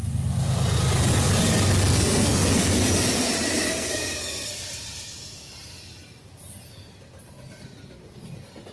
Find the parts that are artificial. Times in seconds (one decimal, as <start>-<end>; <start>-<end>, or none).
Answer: 1.9-2.7; 3.7-4.5